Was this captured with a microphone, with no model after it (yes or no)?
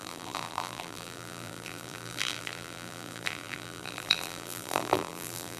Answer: no